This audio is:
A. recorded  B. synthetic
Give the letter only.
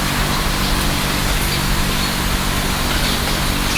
A